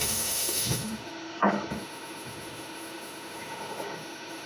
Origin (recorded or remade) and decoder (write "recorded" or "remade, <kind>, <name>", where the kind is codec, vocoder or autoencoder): remade, autoencoder, DAC-VAE